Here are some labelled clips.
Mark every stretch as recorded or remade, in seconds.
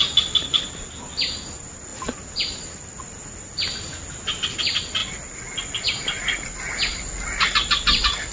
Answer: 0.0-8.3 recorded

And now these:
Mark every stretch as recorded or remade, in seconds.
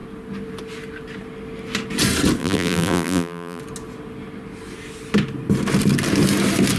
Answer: 0.0-2.4 recorded; 2.4-3.6 remade; 3.6-6.8 recorded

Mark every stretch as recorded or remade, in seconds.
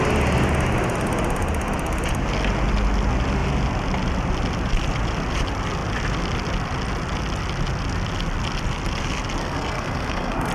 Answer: 0.0-9.4 recorded; 9.4-10.5 remade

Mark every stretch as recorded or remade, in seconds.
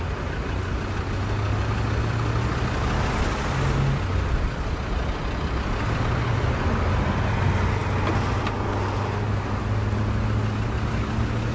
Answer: 0.0-11.5 recorded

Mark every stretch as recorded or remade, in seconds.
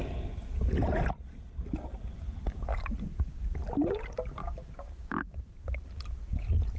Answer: 0.0-4.4 recorded; 4.4-5.4 remade; 5.4-6.8 recorded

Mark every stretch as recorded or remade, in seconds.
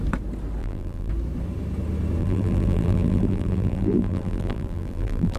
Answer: 0.0-0.6 recorded; 0.6-1.1 remade; 1.1-2.2 recorded; 2.2-5.4 remade